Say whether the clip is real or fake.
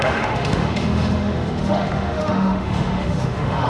fake